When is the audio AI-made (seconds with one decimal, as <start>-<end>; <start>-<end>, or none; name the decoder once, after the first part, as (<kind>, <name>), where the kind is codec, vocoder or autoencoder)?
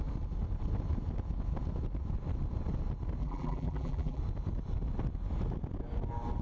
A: 3.2-4.2 (vocoder, BigVGAN v2)